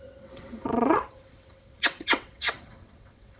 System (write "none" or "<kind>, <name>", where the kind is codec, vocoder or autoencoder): vocoder, WaveNeXt